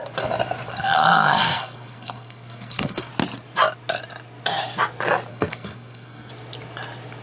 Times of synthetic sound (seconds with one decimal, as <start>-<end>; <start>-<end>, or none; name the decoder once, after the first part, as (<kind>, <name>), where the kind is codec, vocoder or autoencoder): 0.7-3.1 (codec, SNAC); 5.3-6.3